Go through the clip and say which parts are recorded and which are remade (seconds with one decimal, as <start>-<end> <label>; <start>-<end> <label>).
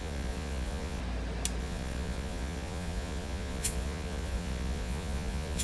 0.0-1.0 remade; 1.0-1.6 recorded; 1.6-5.6 remade